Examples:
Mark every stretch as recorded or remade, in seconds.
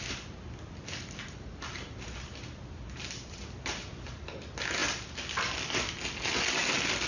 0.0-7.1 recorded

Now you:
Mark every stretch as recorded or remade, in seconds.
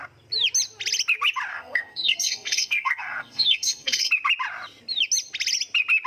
0.0-1.5 recorded; 1.5-4.1 remade; 4.1-6.1 recorded